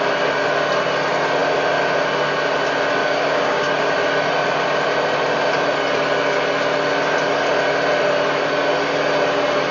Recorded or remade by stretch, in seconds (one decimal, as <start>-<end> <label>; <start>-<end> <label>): 0.0-3.0 recorded; 3.0-3.7 remade; 3.7-9.7 recorded

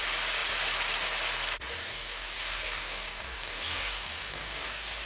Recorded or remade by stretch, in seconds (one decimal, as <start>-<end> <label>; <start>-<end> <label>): 0.0-1.8 recorded; 1.8-5.1 remade

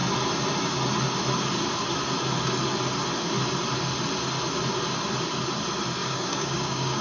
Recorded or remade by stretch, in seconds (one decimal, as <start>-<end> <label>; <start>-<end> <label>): 0.0-6.0 recorded; 6.0-7.0 remade

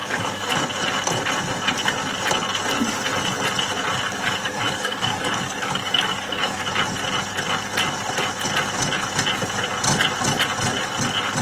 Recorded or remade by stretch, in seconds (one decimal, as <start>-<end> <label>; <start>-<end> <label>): 0.0-0.5 remade; 0.5-4.1 recorded; 4.1-6.6 remade; 6.6-11.4 recorded